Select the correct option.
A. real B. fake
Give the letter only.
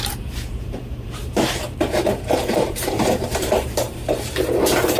B